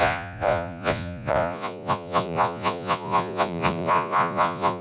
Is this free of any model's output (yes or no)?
no